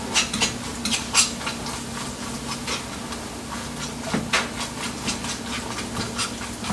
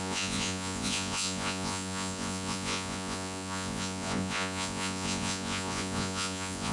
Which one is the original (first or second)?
first